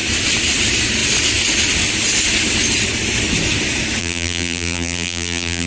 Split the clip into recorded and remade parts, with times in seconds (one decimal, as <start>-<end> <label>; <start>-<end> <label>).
0.0-4.0 recorded; 4.0-5.7 remade